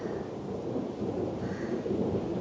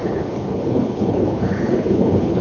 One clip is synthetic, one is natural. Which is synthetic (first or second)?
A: second